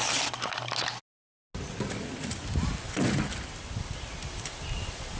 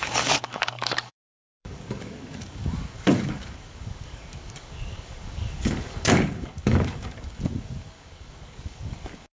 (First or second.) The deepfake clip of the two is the second